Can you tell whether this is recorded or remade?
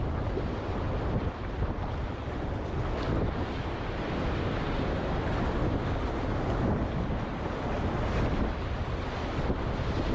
recorded